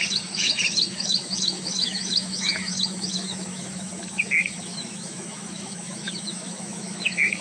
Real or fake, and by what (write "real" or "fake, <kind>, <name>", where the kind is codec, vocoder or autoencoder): fake, autoencoder, DAC-VAE